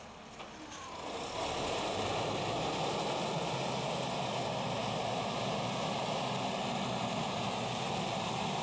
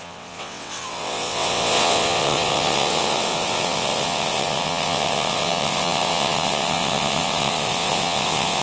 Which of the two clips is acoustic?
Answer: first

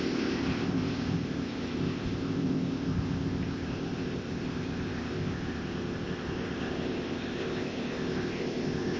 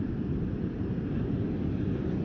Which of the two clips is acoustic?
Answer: second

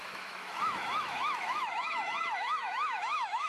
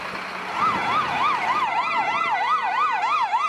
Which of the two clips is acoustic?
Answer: second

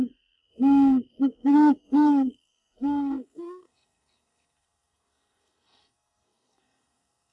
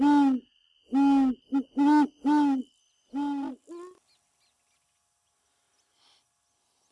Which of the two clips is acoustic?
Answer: second